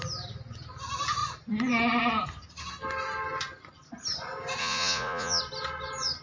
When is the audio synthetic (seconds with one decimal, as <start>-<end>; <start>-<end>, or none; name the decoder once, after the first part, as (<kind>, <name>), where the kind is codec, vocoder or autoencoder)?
4.6-5.4 (vocoder, Vocos)